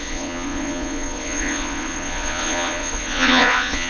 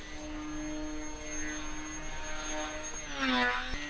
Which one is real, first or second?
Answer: second